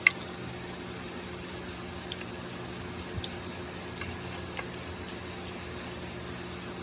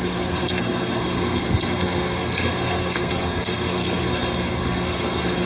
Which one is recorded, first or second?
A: first